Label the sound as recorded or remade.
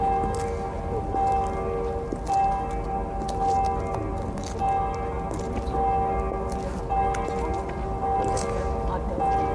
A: recorded